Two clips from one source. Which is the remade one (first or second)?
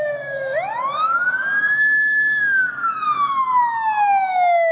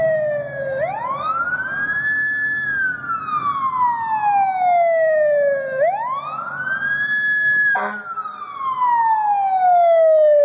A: first